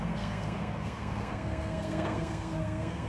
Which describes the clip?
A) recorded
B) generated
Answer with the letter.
B